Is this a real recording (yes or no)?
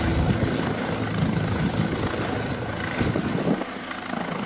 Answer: yes